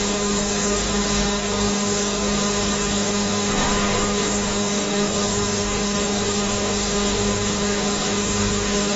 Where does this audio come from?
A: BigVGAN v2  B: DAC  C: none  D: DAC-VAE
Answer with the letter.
B